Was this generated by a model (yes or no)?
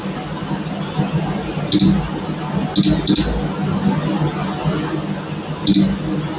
no